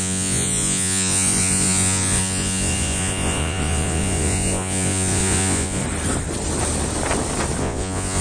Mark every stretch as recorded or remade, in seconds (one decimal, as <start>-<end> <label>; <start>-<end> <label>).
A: 0.0-5.8 remade; 5.8-7.6 recorded; 7.6-8.2 remade